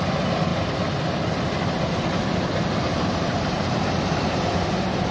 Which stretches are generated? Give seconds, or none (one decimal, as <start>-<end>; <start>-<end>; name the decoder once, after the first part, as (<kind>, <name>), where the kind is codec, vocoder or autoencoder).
2.9-3.7 (vocoder, BigVGAN v2)